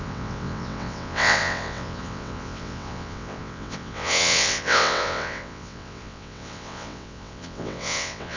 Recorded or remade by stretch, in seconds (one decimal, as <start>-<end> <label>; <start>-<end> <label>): 0.0-8.4 remade